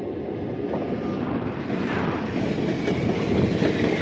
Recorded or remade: recorded